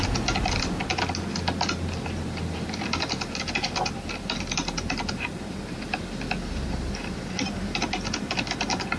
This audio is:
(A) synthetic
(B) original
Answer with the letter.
B